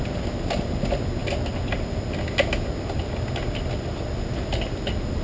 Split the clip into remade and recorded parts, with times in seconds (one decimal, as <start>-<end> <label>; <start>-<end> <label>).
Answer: 0.0-5.2 recorded